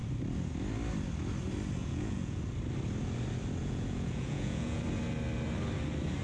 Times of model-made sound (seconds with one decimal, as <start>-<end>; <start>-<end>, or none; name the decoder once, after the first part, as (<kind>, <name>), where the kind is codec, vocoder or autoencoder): 1.8-2.4 (vocoder, Vocos); 3.6-4.8

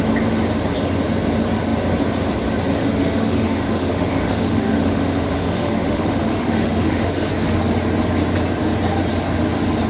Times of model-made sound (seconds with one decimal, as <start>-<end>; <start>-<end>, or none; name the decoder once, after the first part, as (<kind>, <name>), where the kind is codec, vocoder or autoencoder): 2.8-7.3 (autoencoder, DAC-VAE)

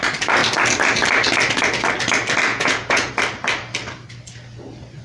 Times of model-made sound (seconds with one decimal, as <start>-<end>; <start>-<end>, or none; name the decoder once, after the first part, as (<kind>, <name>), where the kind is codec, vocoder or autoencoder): 2.5-3.1 (vocoder, Vocos)

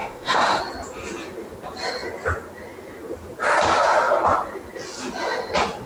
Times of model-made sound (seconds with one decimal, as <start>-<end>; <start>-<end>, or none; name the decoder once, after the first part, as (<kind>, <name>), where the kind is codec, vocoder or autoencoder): 0.0-0.6 (autoencoder, DAC-VAE)

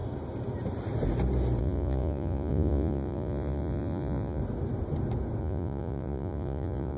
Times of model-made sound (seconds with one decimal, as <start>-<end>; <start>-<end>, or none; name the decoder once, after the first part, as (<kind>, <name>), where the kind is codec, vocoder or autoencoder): 1.6-4.4 (vocoder, Vocos); 5.4-7.0

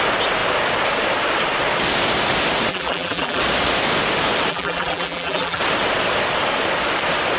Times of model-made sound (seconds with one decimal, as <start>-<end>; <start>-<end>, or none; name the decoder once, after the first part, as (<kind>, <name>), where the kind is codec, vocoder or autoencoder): 2.7-3.4 (vocoder, BigVGAN v2); 4.5-5.6

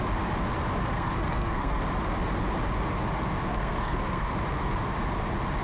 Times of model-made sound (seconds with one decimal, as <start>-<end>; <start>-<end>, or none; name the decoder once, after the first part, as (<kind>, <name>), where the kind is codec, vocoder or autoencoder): 0.8-1.8 (codec, SNAC); 3.5-4.3

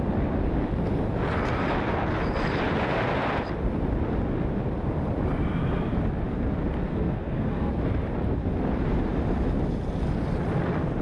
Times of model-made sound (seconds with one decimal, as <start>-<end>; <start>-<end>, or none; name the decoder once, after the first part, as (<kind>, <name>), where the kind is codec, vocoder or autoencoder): 6.9-7.7 (codec, SNAC)